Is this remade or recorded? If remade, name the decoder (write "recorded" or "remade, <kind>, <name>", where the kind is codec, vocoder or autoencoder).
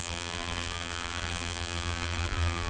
remade, vocoder, BigVGAN v2